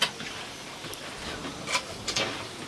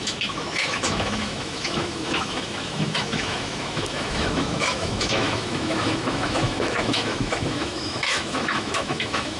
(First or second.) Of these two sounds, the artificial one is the second